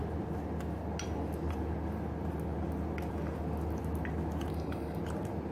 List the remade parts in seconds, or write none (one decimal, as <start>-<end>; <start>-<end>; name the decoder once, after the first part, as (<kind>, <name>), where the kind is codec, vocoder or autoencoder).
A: 4.5-5.0 (codec, DAC)